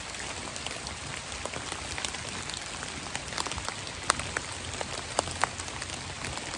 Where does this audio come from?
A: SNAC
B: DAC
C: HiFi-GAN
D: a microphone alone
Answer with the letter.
D